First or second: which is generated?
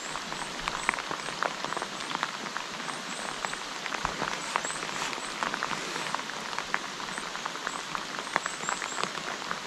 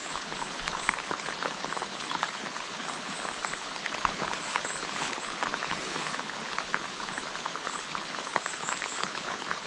second